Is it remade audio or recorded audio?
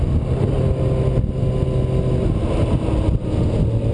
recorded